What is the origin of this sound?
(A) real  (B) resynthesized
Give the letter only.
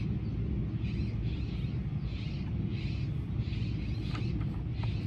A